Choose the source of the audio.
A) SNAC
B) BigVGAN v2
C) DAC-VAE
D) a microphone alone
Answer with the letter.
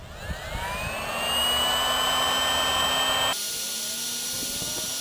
D